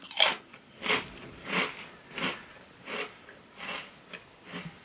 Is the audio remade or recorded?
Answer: recorded